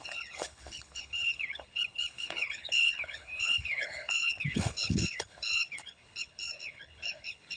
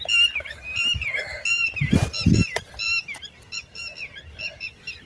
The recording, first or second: second